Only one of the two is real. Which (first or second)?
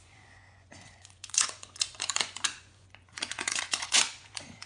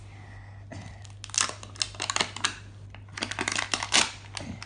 second